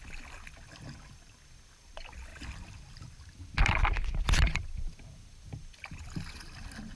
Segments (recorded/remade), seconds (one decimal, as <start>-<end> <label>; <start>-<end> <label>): 0.0-2.3 recorded; 2.3-5.5 remade; 5.5-7.0 recorded